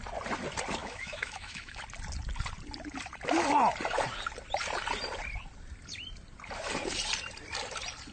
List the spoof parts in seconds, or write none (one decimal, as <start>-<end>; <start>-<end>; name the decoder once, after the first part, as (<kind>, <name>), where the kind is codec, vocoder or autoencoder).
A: 0.8-1.8 (autoencoder, DAC-VAE)